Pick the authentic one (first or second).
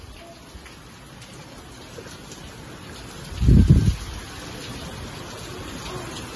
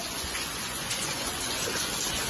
first